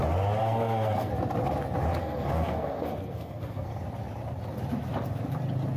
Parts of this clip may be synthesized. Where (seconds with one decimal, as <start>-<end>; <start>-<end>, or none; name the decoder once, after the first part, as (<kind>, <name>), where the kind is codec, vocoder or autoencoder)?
0.4-1.1 (codec, SNAC); 2.0-3.8